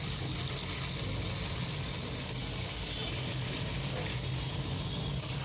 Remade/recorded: recorded